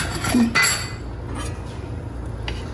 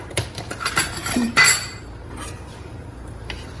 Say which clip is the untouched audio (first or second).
first